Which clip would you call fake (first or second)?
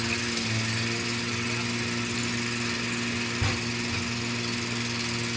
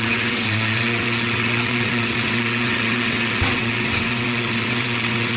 second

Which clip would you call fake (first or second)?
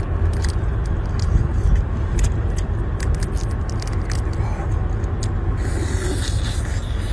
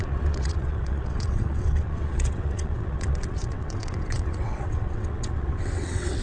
second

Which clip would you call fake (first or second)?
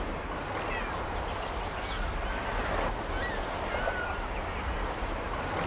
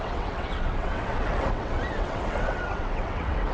second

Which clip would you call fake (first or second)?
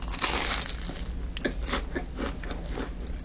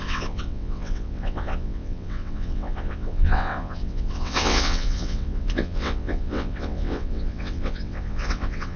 second